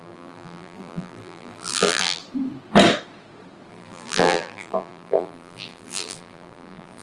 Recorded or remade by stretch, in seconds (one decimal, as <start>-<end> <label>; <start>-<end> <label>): 0.0-2.2 remade; 2.2-3.7 recorded; 3.7-7.0 remade